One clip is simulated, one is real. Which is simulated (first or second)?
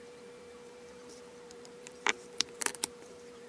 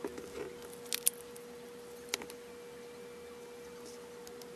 first